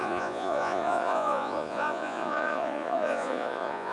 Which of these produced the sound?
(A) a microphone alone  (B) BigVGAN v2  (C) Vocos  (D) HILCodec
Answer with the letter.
C